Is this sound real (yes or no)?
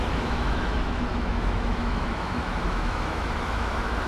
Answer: no